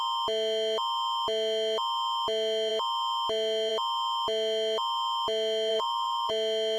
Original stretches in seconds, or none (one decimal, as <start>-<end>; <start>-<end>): 0.0-5.7; 6.3-6.8